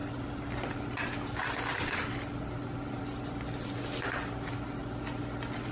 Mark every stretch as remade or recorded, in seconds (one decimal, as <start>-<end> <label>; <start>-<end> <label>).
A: 0.0-4.8 recorded; 4.8-5.7 remade